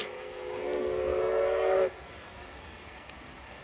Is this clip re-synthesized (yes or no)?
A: yes